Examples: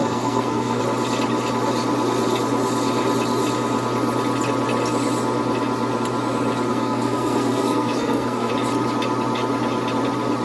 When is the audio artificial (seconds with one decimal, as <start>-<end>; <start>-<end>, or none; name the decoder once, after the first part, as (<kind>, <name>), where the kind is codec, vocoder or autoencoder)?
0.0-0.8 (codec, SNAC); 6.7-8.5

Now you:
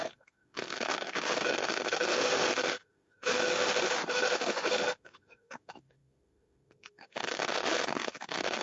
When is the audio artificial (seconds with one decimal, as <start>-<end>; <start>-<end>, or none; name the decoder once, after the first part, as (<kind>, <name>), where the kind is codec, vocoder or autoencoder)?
0.0-8.6 (autoencoder, DAC-VAE)

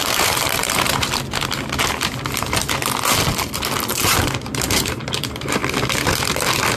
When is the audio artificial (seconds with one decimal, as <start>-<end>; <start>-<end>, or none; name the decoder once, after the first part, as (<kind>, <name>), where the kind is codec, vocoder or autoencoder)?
0.0-0.6 (vocoder, BigVGAN v2); 3.9-5.6

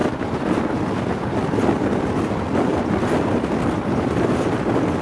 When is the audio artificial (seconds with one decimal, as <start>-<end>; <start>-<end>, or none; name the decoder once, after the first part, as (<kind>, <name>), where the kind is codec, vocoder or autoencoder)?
0.0-0.9 (vocoder, BigVGAN v2); 2.7-5.0

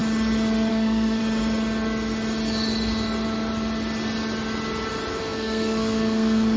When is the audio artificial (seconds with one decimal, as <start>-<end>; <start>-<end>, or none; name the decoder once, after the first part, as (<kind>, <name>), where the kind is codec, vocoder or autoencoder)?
0.7-1.2 (codec, SNAC); 5.2-6.6